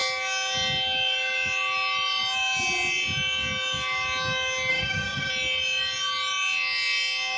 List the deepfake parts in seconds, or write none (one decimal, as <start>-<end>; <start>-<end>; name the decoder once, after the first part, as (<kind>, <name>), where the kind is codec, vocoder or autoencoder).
4.7-5.3 (autoencoder, DAC-VAE)